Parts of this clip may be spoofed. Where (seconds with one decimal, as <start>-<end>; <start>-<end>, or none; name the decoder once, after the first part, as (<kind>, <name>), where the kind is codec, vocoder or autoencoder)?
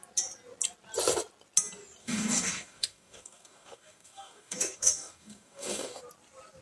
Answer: 2.0-6.0 (codec, DAC)